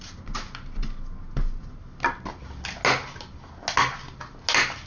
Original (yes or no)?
yes